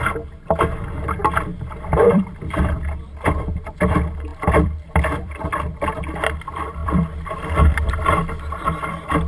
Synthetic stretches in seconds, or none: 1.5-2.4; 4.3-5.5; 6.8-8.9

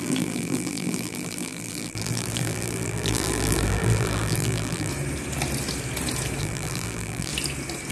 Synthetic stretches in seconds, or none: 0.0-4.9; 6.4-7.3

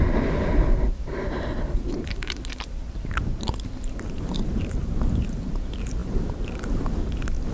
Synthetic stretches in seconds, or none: 0.0-7.5

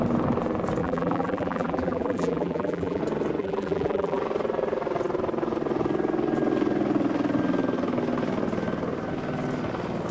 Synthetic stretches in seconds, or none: 0.8-3.0; 3.4-4.2